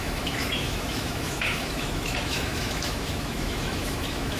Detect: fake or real fake